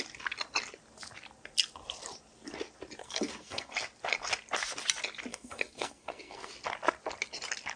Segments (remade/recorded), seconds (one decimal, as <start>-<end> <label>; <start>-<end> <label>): 0.0-3.0 recorded; 3.0-3.7 remade; 3.7-5.3 recorded; 5.3-6.5 remade; 6.5-7.8 recorded